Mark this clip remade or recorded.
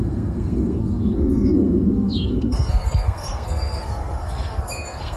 remade